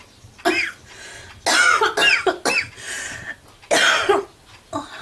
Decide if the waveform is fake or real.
real